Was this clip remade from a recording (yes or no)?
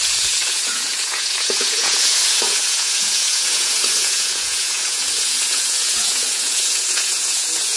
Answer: yes